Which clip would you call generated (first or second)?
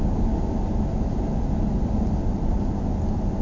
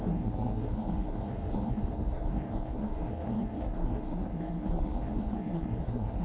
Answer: second